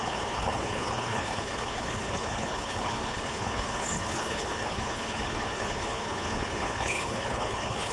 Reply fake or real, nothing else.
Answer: fake